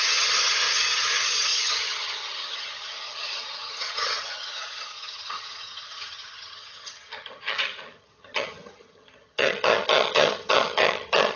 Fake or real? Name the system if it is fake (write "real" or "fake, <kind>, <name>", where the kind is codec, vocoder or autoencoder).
fake, vocoder, HiFi-GAN